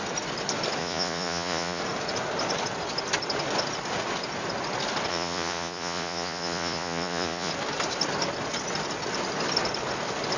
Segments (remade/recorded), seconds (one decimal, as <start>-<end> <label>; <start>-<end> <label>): 0.0-0.8 recorded; 0.8-1.8 remade; 1.8-5.1 recorded; 5.1-7.5 remade; 7.5-10.4 recorded